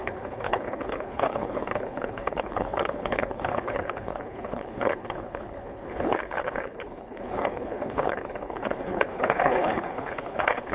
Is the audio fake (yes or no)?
yes